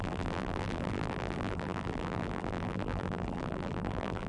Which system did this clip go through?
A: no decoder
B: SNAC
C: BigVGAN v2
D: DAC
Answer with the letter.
C